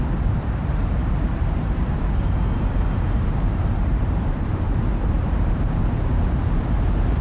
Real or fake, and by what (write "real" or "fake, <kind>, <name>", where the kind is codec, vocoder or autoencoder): fake, vocoder, BigVGAN v2